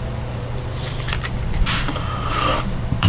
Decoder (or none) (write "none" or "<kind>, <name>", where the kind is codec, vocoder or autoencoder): vocoder, BigVGAN v2